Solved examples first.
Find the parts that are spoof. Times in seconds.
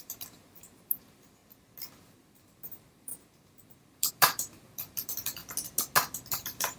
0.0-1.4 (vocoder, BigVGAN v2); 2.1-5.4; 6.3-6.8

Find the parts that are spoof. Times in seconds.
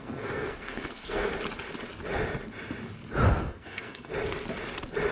0.0-1.3 (codec, SNAC); 3.3-4.1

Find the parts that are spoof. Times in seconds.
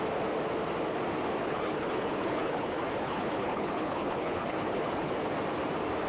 1.4-5.1 (codec, HILCodec)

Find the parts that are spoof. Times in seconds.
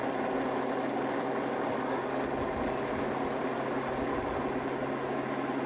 none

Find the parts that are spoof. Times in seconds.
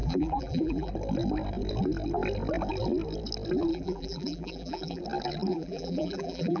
0.0-0.9 (vocoder, BigVGAN v2); 3.7-5.0; 5.5-6.6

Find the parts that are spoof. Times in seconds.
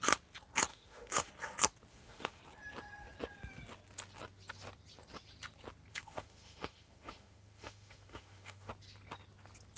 0.7-1.3 (autoencoder, DAC-VAE); 1.9-2.4; 5.9-8.7